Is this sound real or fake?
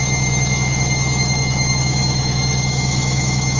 fake